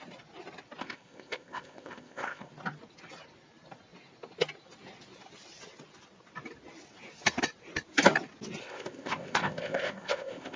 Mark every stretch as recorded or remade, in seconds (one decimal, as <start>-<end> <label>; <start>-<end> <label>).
0.0-0.8 recorded; 0.8-2.5 remade; 2.5-8.6 recorded; 8.6-10.6 remade